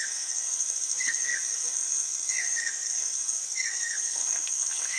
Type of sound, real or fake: fake